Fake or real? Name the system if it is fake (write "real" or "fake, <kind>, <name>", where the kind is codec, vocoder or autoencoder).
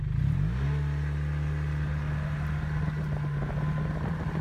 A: real